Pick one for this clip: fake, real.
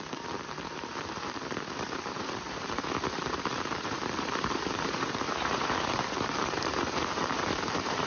fake